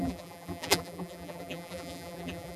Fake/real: fake